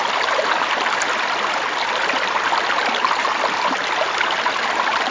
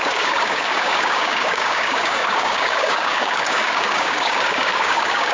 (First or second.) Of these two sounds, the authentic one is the first